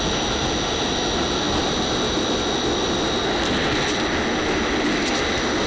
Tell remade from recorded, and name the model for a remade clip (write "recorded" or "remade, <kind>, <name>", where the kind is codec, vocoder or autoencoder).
recorded